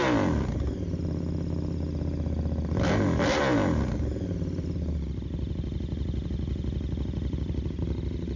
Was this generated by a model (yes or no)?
no